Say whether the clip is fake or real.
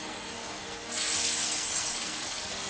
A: fake